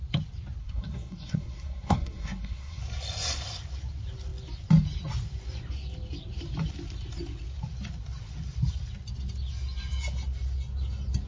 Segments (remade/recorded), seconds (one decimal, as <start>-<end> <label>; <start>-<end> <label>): 0.0-0.6 recorded; 0.6-2.8 remade; 2.8-11.3 recorded